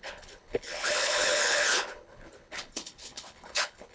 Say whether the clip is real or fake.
fake